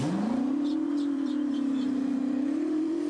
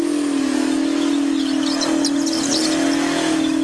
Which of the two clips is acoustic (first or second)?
second